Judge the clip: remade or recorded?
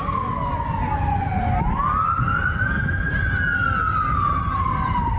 recorded